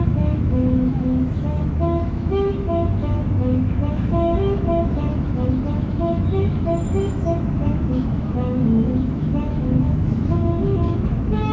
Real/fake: fake